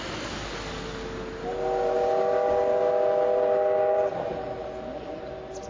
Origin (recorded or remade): recorded